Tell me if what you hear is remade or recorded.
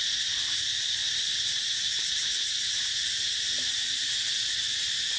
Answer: remade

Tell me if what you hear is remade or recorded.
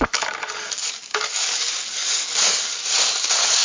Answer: remade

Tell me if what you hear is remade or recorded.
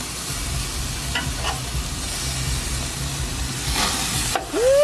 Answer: recorded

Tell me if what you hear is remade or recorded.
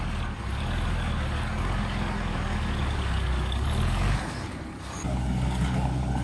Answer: remade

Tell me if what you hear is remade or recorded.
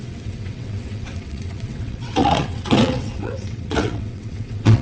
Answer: remade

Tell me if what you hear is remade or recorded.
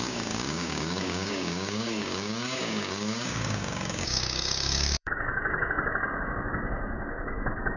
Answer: remade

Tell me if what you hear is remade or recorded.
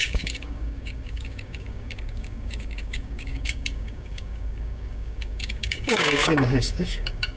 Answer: remade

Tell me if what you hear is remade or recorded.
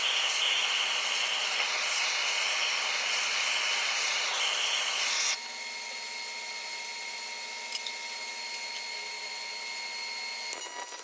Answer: recorded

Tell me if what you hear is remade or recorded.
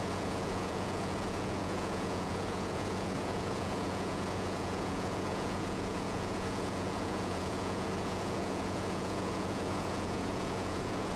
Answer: remade